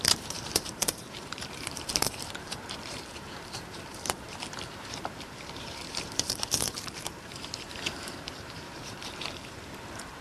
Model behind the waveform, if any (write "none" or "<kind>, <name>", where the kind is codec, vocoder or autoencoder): vocoder, BigVGAN v2